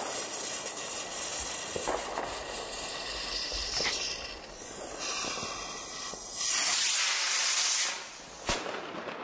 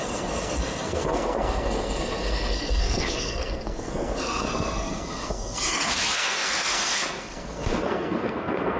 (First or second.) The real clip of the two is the first